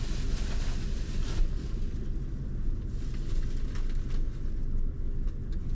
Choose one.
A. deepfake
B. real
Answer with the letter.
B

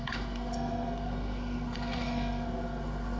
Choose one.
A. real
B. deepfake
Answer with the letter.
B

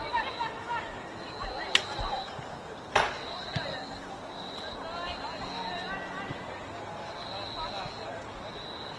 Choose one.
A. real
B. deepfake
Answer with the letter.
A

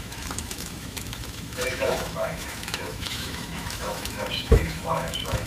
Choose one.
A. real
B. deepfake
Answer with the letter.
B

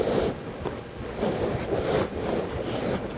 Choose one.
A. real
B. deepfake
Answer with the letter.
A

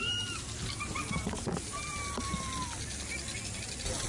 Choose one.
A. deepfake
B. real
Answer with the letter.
B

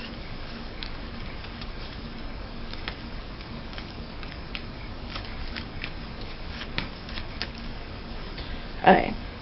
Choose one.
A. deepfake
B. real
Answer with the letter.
A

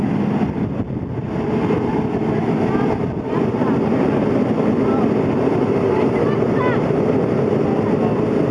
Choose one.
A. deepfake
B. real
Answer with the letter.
B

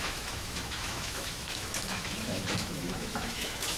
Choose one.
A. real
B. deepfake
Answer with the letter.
B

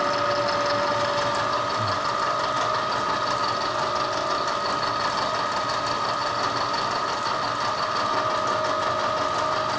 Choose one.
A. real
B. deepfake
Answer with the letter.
A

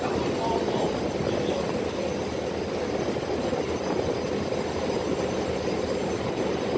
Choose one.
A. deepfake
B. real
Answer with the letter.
B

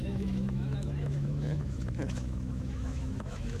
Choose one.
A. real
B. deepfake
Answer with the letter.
B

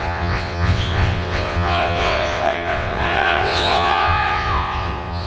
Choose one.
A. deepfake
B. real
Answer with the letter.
A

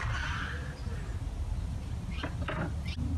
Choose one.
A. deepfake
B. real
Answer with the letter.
B